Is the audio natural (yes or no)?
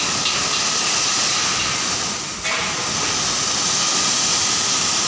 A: yes